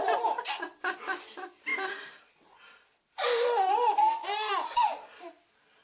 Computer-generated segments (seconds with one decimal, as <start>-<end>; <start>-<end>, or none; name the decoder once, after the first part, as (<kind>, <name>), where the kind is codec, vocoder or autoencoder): 1.7-5.1 (vocoder, BigVGAN v2)

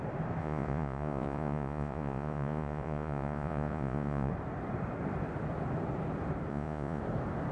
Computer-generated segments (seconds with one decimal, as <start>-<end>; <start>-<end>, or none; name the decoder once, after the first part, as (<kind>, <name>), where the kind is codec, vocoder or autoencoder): 0.4-4.3 (vocoder, Vocos); 6.5-7.0

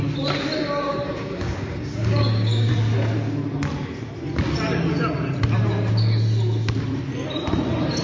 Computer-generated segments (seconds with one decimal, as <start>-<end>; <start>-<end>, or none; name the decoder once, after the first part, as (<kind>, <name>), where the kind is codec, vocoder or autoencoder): 0.9-2.7 (codec, DAC)

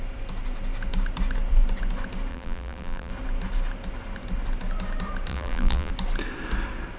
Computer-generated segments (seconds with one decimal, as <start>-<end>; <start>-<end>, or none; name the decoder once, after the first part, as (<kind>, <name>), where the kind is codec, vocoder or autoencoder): 2.3-3.1 (vocoder, BigVGAN v2); 5.3-5.9

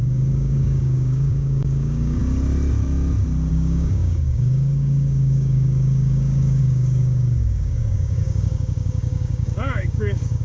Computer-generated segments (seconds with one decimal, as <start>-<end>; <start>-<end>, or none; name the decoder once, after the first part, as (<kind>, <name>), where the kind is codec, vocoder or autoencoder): 0.0-2.2 (codec, DAC); 3.5-10.4